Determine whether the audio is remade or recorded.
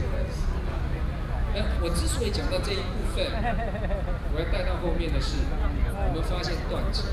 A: recorded